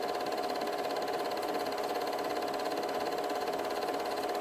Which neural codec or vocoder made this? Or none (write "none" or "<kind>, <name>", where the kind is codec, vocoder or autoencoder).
none